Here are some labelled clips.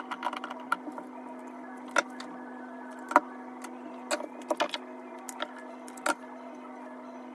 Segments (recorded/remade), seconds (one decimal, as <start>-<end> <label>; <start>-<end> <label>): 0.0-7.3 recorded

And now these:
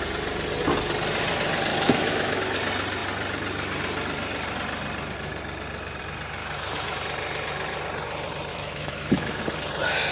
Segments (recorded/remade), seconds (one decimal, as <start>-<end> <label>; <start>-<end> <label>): 0.0-1.7 recorded; 1.7-2.4 remade; 2.4-6.4 recorded; 6.4-7.0 remade; 7.0-8.5 recorded; 8.5-9.4 remade; 9.4-10.1 recorded

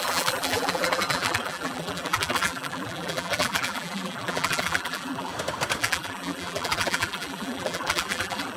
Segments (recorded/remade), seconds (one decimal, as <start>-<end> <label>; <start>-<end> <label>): 0.0-5.3 remade; 5.3-5.8 recorded; 5.8-8.6 remade

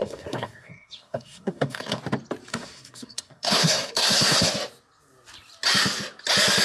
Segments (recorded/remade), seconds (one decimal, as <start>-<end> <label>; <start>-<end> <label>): 0.0-2.0 remade; 2.0-2.5 recorded; 2.5-4.5 remade; 4.5-6.6 recorded

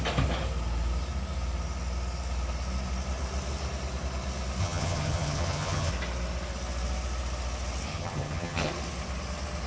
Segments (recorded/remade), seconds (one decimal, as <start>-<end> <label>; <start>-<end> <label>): 0.0-4.6 recorded; 4.6-5.9 remade; 5.9-7.9 recorded; 7.9-8.7 remade; 8.7-9.7 recorded

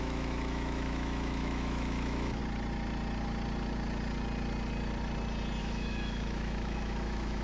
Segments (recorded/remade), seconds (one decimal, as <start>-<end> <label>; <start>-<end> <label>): 0.0-2.4 remade; 2.4-5.6 recorded; 5.6-7.4 remade

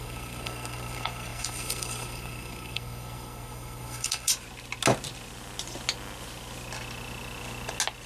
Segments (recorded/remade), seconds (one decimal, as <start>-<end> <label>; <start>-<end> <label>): 0.0-4.3 remade; 4.3-8.1 recorded

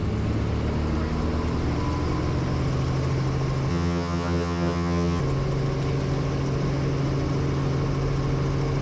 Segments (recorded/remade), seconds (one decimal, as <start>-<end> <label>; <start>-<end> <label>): 0.0-3.7 recorded; 3.7-5.2 remade; 5.2-8.8 recorded